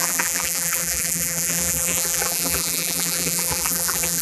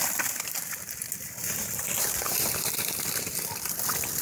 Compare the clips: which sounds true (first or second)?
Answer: second